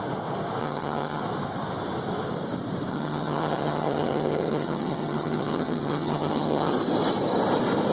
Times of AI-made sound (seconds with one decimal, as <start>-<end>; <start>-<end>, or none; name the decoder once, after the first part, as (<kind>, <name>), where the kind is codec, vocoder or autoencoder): 0.6-1.2 (vocoder, HiFi-GAN); 2.9-6.7